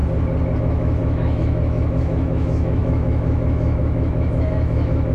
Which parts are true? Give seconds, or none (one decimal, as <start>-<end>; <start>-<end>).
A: 0.0-0.6